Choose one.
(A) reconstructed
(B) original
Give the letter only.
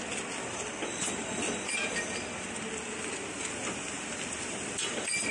B